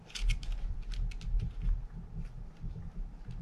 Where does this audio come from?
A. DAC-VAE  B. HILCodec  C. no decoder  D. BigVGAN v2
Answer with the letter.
C